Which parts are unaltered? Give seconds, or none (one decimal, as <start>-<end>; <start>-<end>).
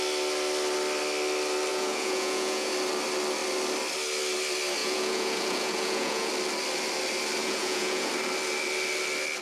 0.0-1.7; 2.7-4.8; 6.3-7.4; 8.1-9.4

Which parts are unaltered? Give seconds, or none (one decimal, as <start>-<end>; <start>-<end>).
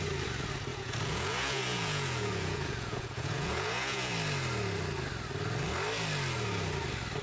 0.0-0.7; 4.1-7.2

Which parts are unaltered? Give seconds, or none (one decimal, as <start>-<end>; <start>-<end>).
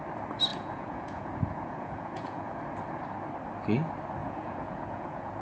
0.0-0.5; 2.6-4.2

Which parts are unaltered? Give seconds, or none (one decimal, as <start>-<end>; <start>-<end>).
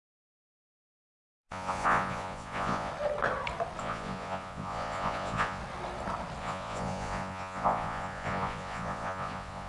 2.9-3.8; 5.6-6.4